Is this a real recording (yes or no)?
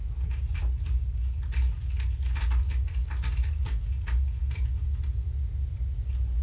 yes